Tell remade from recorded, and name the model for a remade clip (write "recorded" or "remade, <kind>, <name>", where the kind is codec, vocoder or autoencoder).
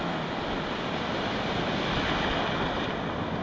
recorded